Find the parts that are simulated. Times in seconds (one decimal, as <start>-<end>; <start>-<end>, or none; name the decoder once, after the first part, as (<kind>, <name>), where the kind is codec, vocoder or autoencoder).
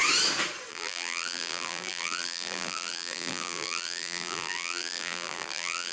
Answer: 0.7-5.9 (vocoder, BigVGAN v2)